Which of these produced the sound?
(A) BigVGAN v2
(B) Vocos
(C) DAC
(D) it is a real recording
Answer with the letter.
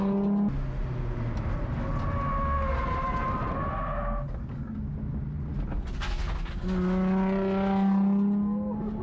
D